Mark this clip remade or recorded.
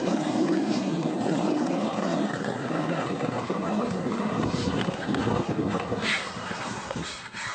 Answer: remade